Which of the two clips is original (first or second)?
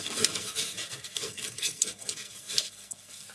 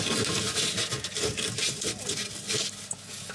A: second